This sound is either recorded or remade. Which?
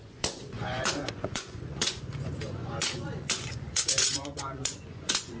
remade